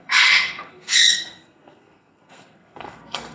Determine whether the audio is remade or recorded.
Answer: remade